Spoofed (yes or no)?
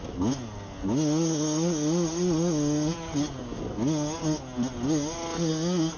no